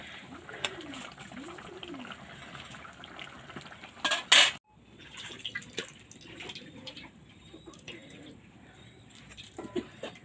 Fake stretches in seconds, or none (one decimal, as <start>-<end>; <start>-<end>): 0.0-1.7; 6.7-10.2